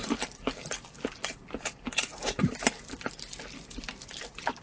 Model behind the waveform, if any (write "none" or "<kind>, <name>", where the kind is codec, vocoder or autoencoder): none